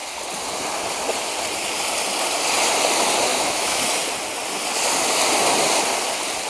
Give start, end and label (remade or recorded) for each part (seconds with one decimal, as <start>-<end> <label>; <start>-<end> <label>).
0.0-3.3 recorded; 3.3-3.8 remade; 3.8-6.5 recorded